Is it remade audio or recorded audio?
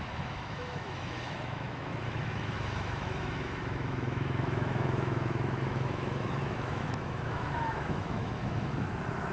remade